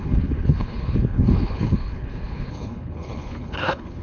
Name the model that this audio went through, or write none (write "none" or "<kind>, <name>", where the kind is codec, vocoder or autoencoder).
codec, HILCodec